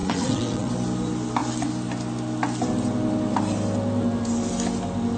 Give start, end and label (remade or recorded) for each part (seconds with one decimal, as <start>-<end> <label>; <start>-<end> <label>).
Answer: 0.0-0.7 remade; 0.7-5.2 recorded